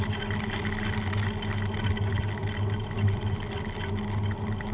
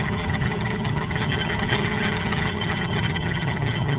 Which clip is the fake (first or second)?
second